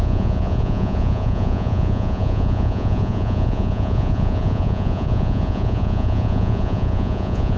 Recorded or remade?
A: remade